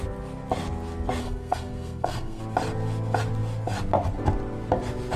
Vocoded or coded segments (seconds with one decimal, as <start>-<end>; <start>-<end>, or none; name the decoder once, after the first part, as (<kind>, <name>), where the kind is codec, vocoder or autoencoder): 1.2-2.4 (codec, SNAC)